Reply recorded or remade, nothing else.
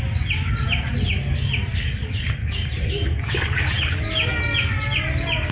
recorded